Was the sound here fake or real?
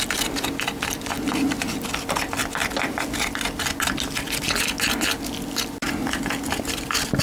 real